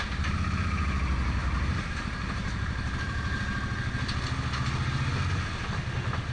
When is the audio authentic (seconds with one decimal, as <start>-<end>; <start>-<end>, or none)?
0.0-1.4; 3.4-6.3